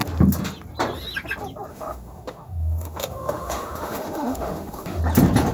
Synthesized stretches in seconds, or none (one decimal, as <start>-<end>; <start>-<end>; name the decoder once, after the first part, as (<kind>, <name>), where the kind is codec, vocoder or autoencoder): 1.7-5.0 (autoencoder, DAC-VAE)